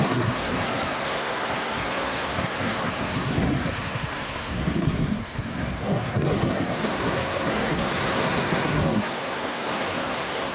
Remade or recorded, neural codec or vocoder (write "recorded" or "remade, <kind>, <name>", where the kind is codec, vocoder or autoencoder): remade, codec, SNAC